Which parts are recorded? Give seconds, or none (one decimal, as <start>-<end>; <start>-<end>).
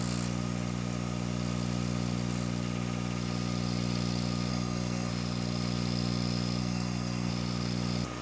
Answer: 0.0-4.5; 5.1-6.6; 7.3-8.2